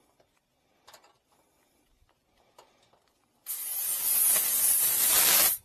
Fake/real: real